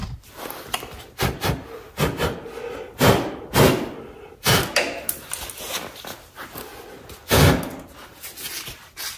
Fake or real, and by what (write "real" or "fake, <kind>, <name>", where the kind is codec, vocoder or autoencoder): real